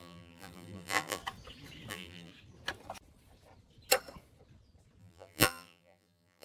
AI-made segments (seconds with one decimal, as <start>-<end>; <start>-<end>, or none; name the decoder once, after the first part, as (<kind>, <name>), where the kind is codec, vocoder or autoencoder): 0.0-1.2 (vocoder, BigVGAN v2); 1.9-2.3; 5.0-6.4